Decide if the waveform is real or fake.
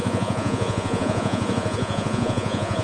fake